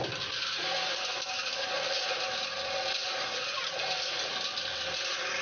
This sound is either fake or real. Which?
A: real